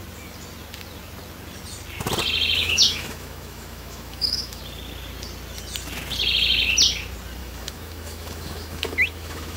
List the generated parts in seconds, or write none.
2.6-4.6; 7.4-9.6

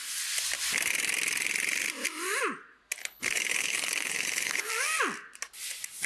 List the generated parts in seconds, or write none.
3.0-4.7

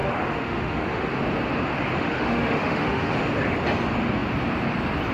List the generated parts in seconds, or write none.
0.0-1.1; 2.0-3.1